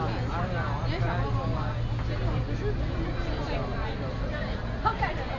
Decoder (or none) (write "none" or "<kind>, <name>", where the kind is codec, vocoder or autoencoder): none